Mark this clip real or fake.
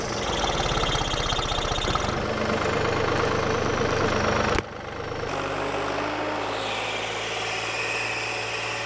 real